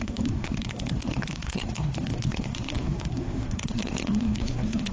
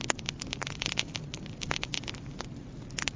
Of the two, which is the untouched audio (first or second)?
second